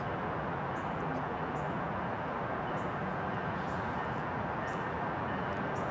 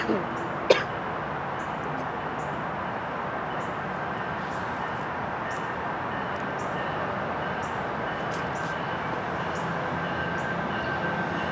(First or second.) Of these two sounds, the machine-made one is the first